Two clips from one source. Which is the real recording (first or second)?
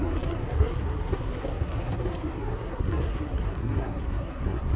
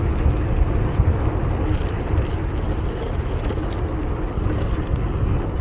second